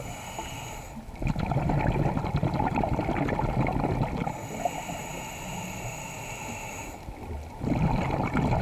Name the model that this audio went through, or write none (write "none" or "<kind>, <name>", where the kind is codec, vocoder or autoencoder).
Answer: none